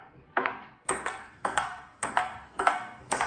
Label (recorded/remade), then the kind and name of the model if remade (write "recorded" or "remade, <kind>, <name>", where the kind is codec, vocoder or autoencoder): remade, codec, SNAC